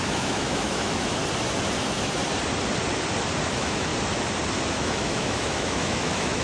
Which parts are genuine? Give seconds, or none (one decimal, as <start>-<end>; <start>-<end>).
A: 1.2-3.5; 3.9-4.7